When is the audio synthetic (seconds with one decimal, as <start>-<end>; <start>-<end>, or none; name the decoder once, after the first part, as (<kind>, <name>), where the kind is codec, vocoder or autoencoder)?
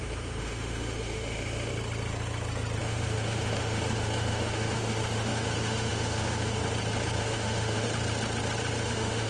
0.0-1.7 (autoencoder, DAC-VAE); 2.8-6.6; 7.2-7.9; 8.8-9.3